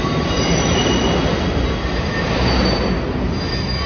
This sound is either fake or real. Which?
real